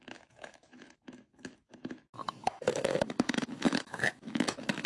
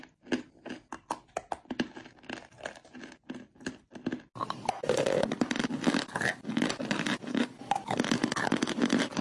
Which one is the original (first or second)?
second